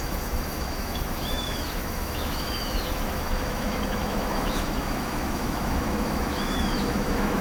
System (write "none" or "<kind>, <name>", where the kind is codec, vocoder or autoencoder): autoencoder, DAC-VAE